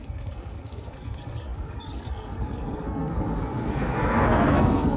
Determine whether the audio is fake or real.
fake